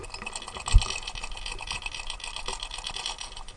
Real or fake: real